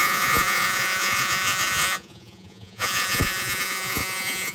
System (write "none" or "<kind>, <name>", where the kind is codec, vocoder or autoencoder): vocoder, Vocos